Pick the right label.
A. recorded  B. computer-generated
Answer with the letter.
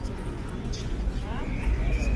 B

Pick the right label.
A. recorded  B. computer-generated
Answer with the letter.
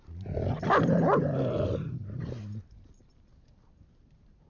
A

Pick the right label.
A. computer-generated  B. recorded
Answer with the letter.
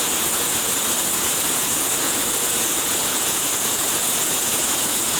A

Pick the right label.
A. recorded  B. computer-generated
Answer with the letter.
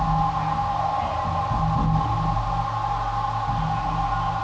A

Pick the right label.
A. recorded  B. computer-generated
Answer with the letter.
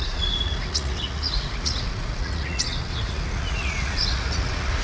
B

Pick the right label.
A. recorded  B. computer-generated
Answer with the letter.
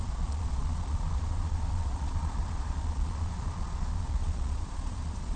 B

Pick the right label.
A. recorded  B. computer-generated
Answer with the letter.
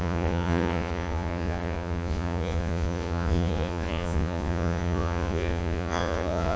B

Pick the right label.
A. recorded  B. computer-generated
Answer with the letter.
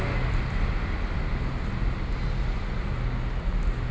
A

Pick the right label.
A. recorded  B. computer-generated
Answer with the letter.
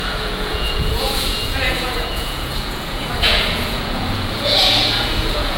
B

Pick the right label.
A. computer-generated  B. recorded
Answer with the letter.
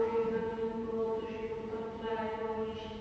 A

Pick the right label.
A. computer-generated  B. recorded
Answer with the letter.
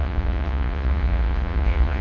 A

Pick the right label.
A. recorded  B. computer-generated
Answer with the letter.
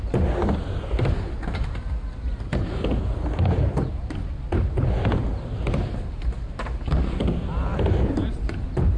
A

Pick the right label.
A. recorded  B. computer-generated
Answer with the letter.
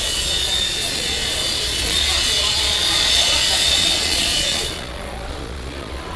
B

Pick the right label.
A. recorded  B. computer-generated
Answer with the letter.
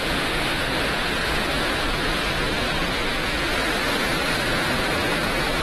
B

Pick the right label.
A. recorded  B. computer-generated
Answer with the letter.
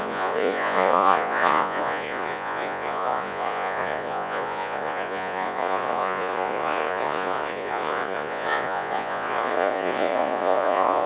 B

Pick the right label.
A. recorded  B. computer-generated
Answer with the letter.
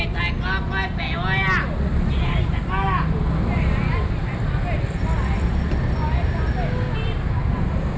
A